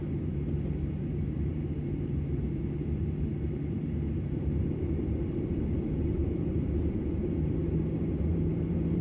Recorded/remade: remade